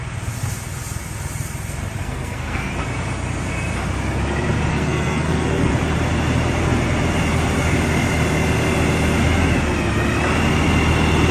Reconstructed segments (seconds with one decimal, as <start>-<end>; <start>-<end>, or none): 2.0-2.7; 4.7-5.7